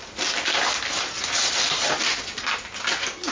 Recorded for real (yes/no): yes